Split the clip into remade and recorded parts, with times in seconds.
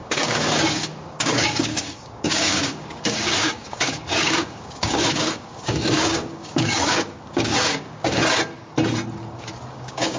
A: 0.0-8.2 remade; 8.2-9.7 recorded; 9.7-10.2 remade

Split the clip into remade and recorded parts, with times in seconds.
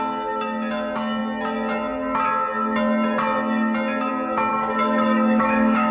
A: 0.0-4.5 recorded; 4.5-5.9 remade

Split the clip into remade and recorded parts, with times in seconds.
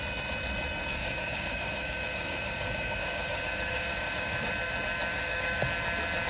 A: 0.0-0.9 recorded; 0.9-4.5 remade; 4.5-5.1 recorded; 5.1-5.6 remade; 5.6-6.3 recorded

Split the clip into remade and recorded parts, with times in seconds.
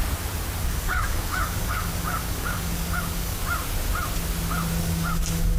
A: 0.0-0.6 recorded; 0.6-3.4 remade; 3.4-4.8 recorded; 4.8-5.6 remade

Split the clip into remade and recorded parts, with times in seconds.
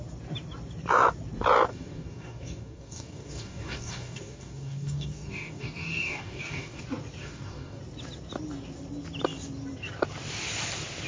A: 0.0-1.7 recorded; 1.7-6.8 remade; 6.8-7.2 recorded; 7.2-7.8 remade; 7.8-11.1 recorded